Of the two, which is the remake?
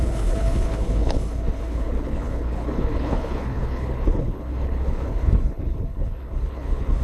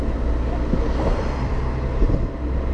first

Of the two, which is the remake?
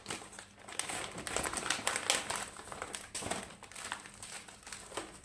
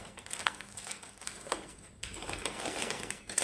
second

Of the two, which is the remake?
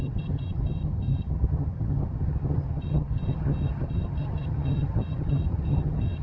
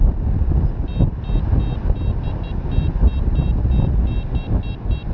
first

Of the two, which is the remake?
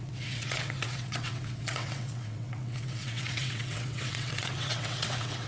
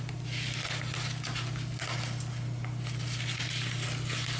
first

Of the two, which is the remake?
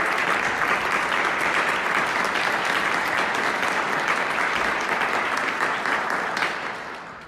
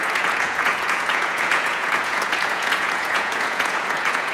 second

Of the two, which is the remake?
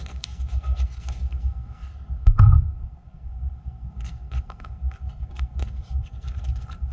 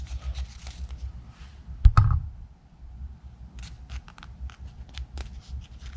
first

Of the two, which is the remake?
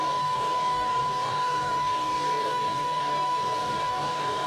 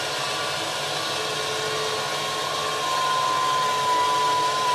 first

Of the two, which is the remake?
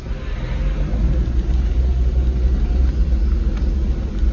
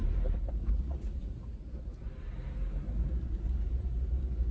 second